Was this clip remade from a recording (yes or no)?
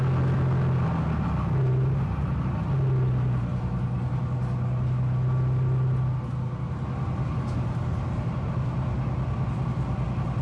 no